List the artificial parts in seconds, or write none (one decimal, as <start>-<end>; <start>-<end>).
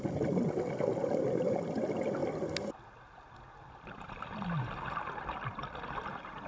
none